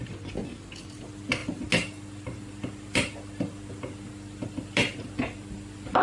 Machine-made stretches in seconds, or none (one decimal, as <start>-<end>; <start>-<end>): none